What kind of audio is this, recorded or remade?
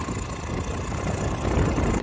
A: recorded